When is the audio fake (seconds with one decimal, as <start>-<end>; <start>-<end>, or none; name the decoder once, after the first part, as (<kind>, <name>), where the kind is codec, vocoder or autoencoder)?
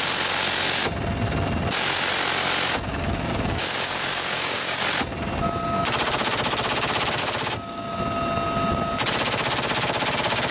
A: 2.9-4.8 (codec, DAC); 7.2-8.0